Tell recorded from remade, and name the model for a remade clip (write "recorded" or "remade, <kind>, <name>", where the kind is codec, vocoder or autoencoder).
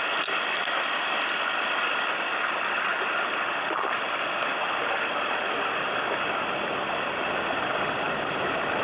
recorded